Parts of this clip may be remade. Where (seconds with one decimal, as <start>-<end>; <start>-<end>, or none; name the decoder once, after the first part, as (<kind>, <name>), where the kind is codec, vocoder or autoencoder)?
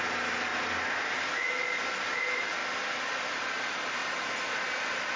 none